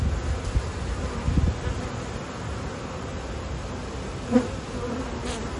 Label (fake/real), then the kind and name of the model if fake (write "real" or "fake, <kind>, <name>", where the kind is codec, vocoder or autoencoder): real